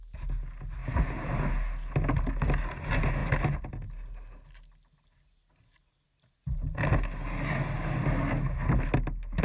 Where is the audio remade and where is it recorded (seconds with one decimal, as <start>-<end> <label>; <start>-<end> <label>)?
0.0-9.4 recorded